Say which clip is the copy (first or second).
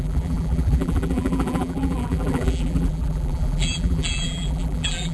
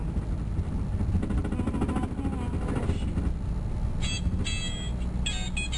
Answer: first